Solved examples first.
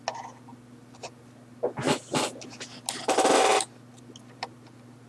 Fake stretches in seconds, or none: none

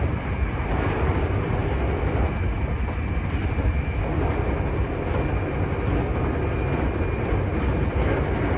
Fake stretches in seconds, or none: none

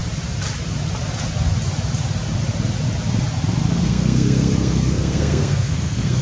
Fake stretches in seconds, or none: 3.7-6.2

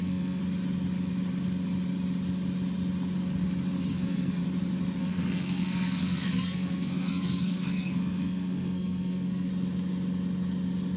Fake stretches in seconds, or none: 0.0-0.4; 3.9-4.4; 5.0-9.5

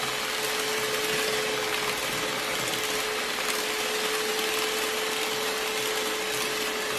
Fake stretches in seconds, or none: none

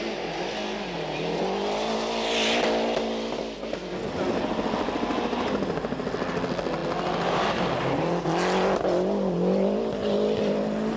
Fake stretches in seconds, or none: none

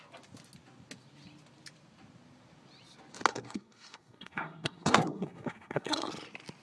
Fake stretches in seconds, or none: 3.3-6.1